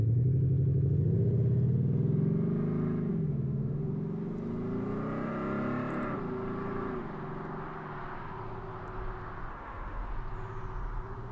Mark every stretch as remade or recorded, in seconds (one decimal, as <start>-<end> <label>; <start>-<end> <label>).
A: 0.0-3.1 recorded; 3.1-3.9 remade; 3.9-9.5 recorded; 9.5-10.1 remade; 10.1-11.3 recorded